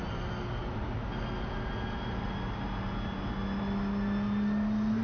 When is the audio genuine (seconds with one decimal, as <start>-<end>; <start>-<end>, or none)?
0.0-5.0